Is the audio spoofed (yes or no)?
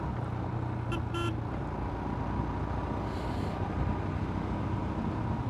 no